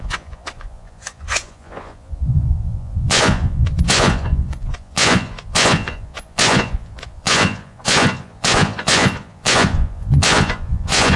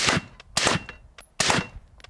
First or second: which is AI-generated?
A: first